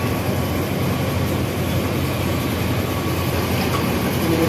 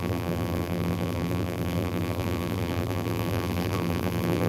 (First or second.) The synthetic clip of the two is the second